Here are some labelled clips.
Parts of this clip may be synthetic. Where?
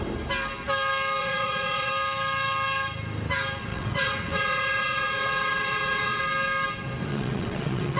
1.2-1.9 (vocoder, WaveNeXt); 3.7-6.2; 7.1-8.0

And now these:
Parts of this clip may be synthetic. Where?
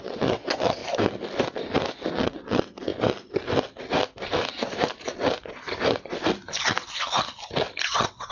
0.0-0.8 (vocoder, WaveNeXt); 2.1-2.9; 7.9-8.3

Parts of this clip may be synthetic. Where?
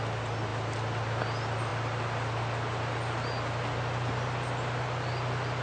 none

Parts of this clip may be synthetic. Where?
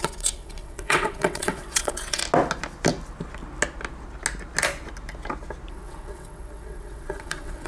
0.0-2.2 (vocoder, WaveNeXt); 5.7-7.7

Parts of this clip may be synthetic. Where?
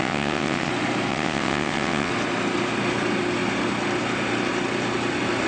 0.0-0.7 (vocoder, WaveNeXt); 1.1-2.1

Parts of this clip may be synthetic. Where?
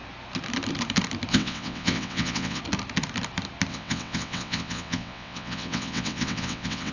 1.3-2.6 (vocoder, WaveNeXt); 3.7-6.9